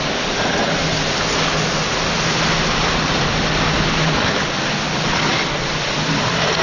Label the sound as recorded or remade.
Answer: recorded